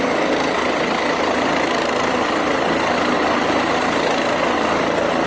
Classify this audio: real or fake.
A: real